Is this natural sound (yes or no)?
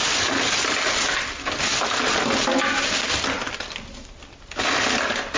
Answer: yes